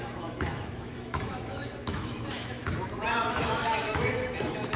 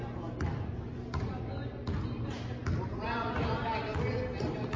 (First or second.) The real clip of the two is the second